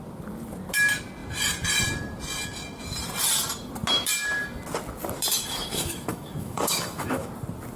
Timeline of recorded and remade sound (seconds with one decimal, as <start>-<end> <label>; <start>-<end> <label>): 0.0-5.3 recorded; 5.3-7.3 remade; 7.3-7.8 recorded